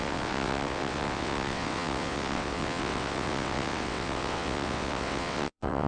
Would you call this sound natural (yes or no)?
no